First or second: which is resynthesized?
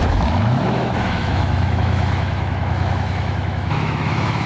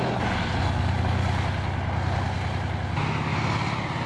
first